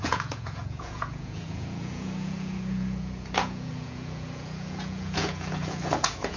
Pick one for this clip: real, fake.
fake